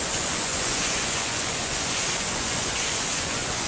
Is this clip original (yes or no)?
no